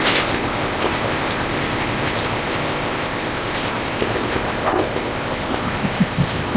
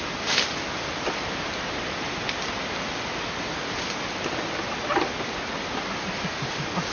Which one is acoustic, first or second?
second